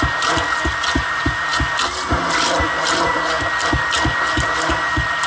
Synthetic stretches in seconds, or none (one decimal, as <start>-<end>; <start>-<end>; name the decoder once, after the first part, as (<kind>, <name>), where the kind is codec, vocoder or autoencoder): none